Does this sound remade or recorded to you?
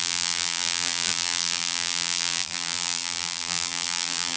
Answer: remade